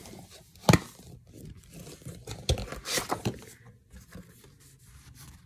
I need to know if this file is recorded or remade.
recorded